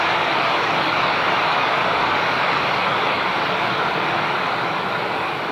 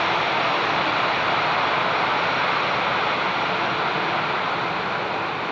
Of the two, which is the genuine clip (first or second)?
second